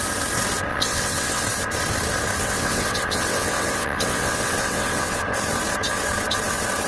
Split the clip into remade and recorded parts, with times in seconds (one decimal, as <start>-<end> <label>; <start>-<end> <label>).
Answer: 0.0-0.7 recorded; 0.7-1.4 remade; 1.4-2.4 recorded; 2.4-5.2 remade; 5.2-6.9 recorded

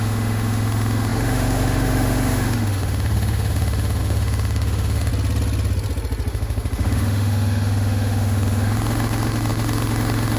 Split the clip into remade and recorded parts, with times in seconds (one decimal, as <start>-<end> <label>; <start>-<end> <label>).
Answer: 0.0-5.1 remade; 5.1-6.3 recorded; 6.3-10.4 remade

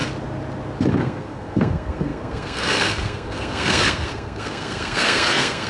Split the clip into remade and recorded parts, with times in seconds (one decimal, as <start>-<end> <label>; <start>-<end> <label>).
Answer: 0.0-0.9 recorded; 0.9-5.7 remade

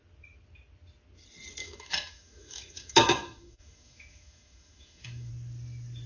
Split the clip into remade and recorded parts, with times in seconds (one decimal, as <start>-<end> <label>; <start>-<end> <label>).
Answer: 0.0-1.6 recorded; 1.6-5.3 remade; 5.3-6.1 recorded